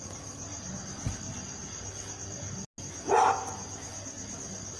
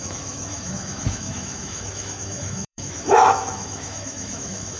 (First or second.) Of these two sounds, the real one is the first